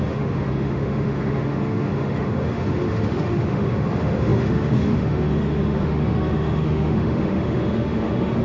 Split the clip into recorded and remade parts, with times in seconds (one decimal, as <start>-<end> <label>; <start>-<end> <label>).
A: 0.0-8.4 remade

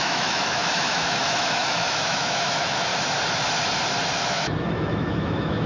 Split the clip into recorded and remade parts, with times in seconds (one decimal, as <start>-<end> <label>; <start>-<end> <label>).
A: 0.0-2.9 remade; 2.9-4.3 recorded; 4.3-5.7 remade

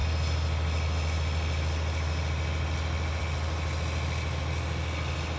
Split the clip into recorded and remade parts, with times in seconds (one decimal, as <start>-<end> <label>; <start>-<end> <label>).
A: 0.0-5.4 recorded

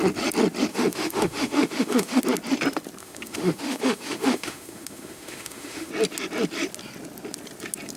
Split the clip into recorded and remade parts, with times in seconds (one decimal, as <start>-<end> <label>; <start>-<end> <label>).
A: 0.0-0.7 recorded; 0.7-2.2 remade; 2.2-3.0 recorded; 3.0-5.9 remade; 5.9-8.0 recorded

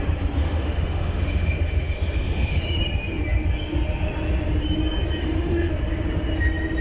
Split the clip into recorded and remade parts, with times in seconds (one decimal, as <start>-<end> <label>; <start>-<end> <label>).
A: 0.0-0.4 recorded; 0.4-2.8 remade; 2.8-5.2 recorded; 5.2-5.7 remade; 5.7-6.8 recorded

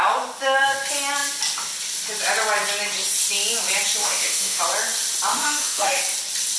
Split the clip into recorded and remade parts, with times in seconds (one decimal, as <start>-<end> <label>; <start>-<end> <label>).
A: 0.0-4.0 recorded; 4.0-4.6 remade; 4.6-5.3 recorded; 5.3-6.0 remade; 6.0-6.6 recorded

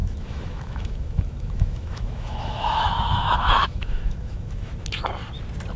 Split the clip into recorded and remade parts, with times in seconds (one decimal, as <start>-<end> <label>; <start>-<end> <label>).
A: 0.0-4.7 remade; 4.7-5.8 recorded

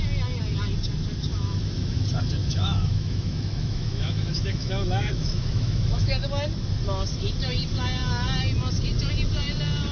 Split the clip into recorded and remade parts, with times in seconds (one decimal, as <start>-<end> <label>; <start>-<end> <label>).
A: 0.0-1.3 recorded; 1.3-2.0 remade; 2.0-2.4 recorded; 2.4-6.1 remade; 6.1-9.9 recorded